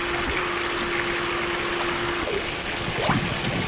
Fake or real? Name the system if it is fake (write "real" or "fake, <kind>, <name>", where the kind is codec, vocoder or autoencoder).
real